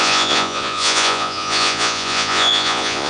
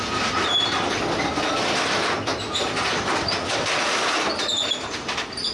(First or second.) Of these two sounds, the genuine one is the second